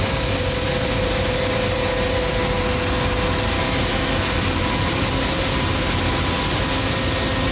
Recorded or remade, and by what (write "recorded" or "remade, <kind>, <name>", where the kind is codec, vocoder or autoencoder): recorded